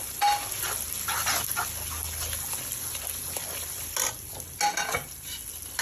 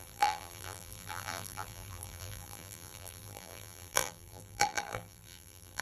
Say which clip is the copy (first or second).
second